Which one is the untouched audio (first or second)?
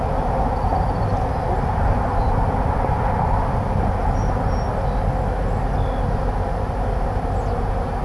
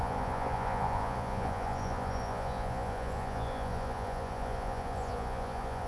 first